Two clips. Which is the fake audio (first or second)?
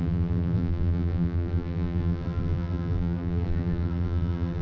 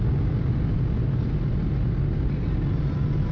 first